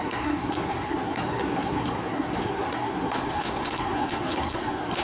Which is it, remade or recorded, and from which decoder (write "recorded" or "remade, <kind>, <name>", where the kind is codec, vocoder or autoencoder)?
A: remade, codec, SNAC